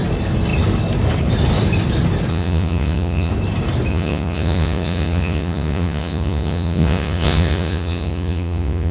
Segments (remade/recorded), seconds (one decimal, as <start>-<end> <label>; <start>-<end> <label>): 0.0-2.3 recorded; 2.3-3.3 remade; 3.3-3.9 recorded; 3.9-8.9 remade